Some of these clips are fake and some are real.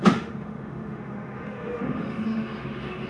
fake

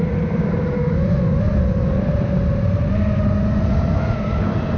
real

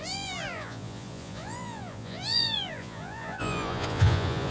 fake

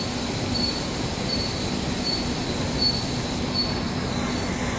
real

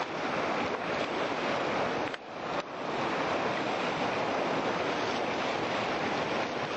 real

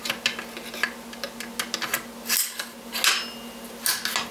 real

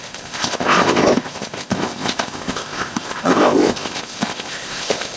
fake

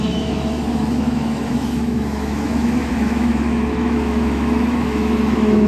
fake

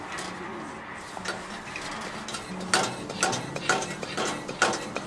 real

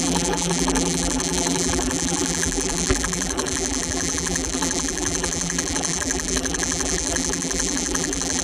fake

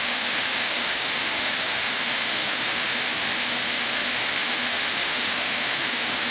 fake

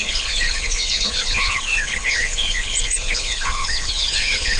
fake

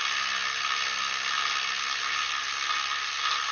real